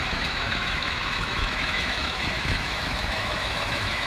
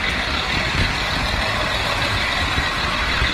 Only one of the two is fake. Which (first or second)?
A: first